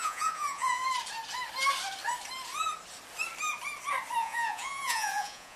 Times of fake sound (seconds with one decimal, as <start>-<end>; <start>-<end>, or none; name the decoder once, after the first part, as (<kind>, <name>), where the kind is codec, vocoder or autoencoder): 0.0-0.8 (vocoder, Vocos); 4.2-5.6